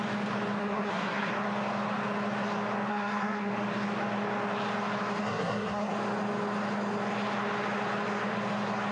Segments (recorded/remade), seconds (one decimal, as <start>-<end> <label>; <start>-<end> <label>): 0.0-0.6 recorded; 0.6-1.3 remade; 1.3-2.9 recorded; 2.9-3.5 remade; 3.5-5.2 recorded; 5.2-5.9 remade; 5.9-8.9 recorded